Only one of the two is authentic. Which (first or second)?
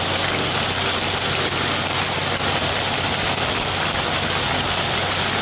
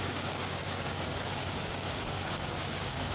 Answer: first